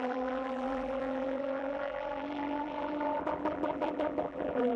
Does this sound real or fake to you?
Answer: fake